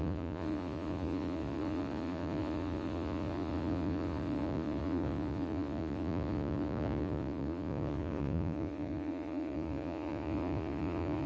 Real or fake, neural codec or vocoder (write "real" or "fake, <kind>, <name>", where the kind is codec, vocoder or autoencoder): fake, vocoder, Vocos